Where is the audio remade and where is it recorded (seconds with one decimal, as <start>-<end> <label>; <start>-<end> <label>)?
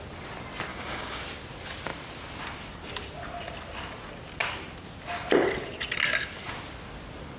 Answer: 0.0-0.7 recorded; 0.7-1.2 remade; 1.2-7.4 recorded